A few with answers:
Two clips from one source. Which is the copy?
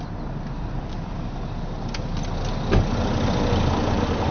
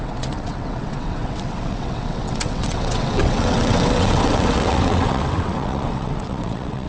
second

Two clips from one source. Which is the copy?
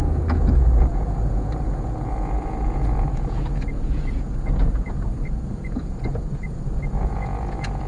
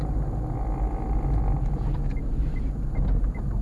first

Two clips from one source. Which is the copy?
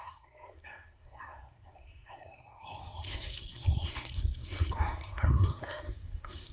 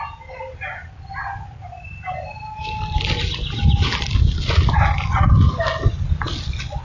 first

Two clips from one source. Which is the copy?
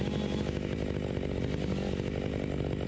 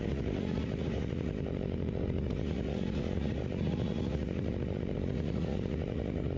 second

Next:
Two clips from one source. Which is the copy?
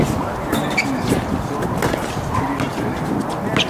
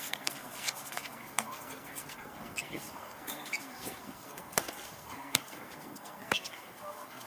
second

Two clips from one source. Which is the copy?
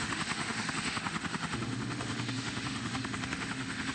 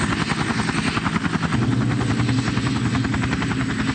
first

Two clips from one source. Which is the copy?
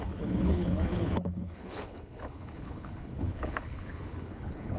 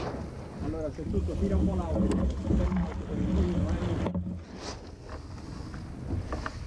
first